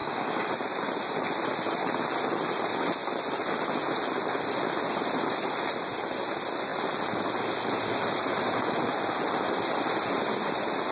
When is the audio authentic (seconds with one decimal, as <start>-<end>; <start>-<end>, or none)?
0.5-10.9